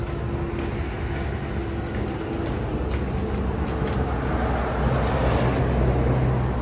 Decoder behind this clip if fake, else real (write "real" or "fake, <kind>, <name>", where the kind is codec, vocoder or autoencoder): real